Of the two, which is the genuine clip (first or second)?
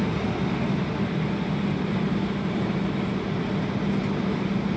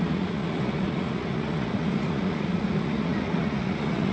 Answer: first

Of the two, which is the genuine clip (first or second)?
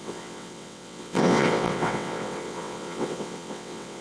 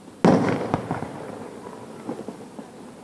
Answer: second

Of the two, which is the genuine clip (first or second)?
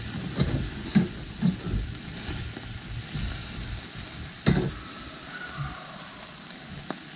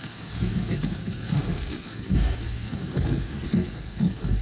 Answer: first